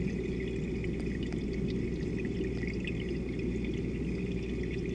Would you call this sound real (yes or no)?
yes